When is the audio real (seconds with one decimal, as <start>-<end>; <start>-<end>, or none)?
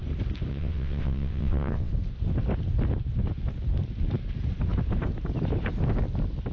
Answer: 0.0-0.5; 1.9-6.5